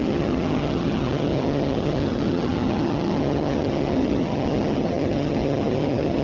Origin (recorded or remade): remade